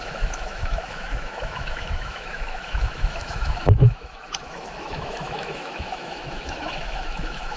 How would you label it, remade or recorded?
remade